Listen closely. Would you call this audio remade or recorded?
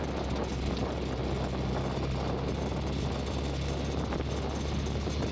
recorded